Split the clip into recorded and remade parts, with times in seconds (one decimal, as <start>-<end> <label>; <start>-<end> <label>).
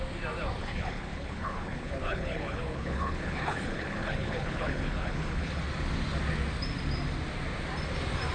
0.0-0.6 recorded; 0.6-5.6 remade; 5.6-8.3 recorded